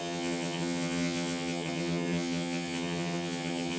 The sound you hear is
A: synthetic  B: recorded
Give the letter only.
A